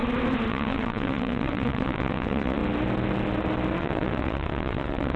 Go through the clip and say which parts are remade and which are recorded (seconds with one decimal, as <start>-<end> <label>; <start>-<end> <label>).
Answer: 0.0-0.5 recorded; 0.5-2.6 remade; 2.6-3.8 recorded; 3.8-5.2 remade